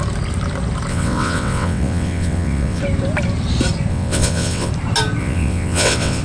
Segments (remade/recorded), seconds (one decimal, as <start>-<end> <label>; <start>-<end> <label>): 0.0-0.9 recorded; 0.9-2.8 remade; 2.8-3.9 recorded; 3.9-4.7 remade; 4.7-5.2 recorded; 5.2-6.2 remade